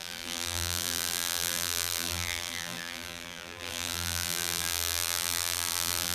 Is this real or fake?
fake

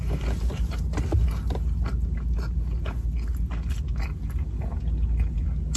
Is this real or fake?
real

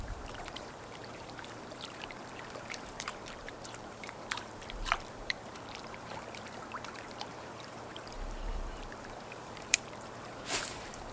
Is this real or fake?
fake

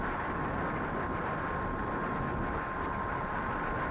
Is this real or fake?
real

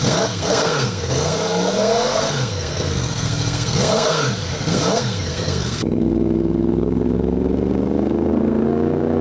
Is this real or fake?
fake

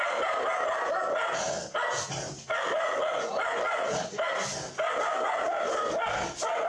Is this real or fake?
real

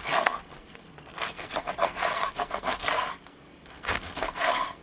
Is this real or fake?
fake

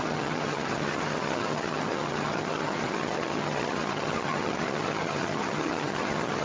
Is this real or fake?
fake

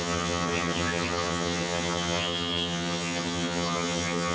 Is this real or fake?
fake